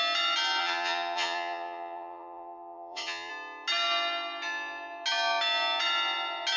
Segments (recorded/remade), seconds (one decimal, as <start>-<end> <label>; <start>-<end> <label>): 0.0-0.6 recorded; 0.6-3.3 remade; 3.3-6.6 recorded